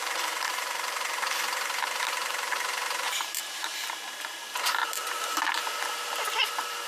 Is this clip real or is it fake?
fake